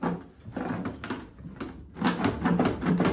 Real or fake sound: real